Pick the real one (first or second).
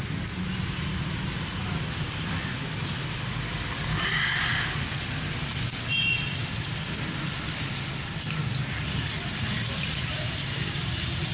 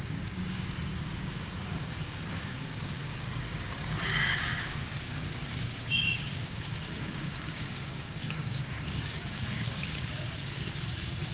first